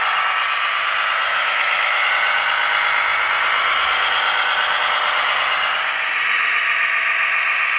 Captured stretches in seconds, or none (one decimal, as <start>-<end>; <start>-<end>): 0.0-1.3; 2.1-7.8